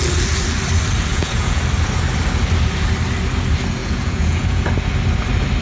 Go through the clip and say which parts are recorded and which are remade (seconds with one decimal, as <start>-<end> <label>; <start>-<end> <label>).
0.0-1.1 recorded; 1.1-1.6 remade; 1.6-3.8 recorded; 3.8-4.7 remade; 4.7-5.6 recorded